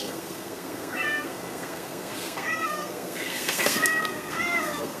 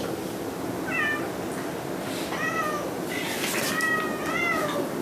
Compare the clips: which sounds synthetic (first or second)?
first